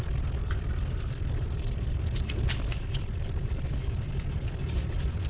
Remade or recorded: remade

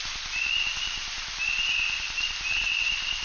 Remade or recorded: recorded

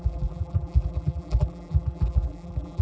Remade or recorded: remade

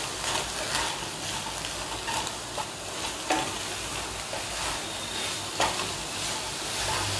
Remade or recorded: recorded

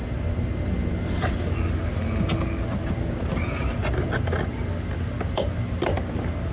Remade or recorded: recorded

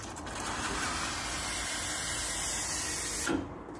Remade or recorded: recorded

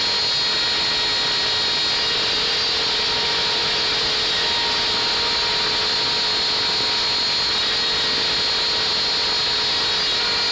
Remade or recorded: recorded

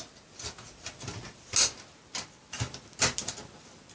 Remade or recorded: recorded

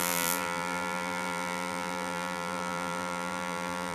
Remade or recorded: remade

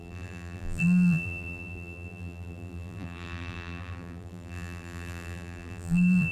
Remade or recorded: remade